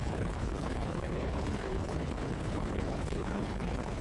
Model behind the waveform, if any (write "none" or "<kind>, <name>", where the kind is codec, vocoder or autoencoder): codec, HILCodec